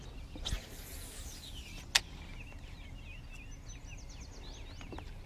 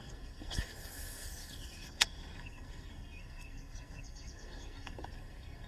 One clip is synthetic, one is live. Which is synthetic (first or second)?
second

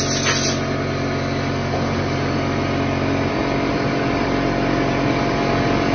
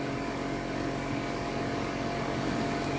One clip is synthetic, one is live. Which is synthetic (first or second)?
second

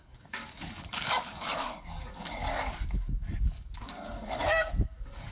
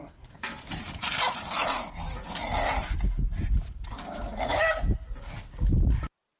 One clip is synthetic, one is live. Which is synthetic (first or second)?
first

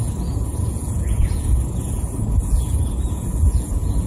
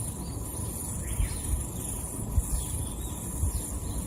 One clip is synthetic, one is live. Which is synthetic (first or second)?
first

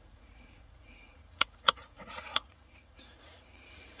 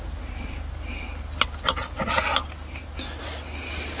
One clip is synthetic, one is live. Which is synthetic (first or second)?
first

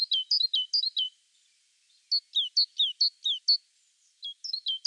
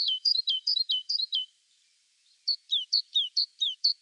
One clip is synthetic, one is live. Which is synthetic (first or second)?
second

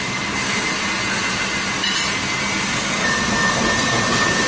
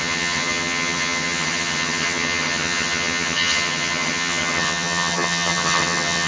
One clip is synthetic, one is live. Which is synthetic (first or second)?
second